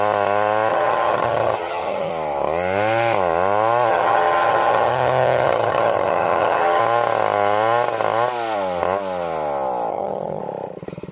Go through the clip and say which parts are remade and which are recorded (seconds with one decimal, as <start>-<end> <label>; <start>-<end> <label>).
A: 0.0-0.7 recorded; 0.7-2.1 remade; 2.1-3.9 recorded; 3.9-6.8 remade; 6.8-9.9 recorded; 9.9-10.4 remade; 10.4-11.1 recorded